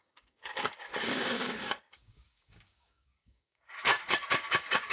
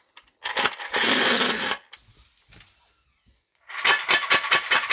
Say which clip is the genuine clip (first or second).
second